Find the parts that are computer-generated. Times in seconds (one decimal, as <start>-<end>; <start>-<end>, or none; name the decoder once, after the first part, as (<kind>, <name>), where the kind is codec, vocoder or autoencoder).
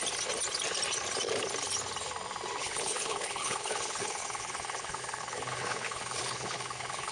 2.6-7.1 (codec, HILCodec)